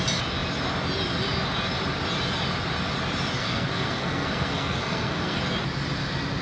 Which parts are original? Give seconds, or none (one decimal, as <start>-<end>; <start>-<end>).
0.0-3.4; 5.4-6.4